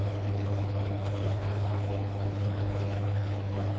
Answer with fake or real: fake